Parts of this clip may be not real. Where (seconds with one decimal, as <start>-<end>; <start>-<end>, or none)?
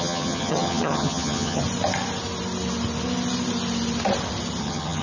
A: 0.0-1.6; 4.6-5.0